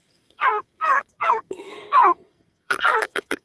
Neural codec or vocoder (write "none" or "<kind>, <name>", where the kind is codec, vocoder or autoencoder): codec, SNAC